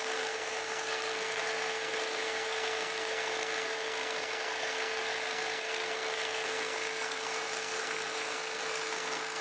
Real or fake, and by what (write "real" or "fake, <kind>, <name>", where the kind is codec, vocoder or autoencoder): fake, codec, SNAC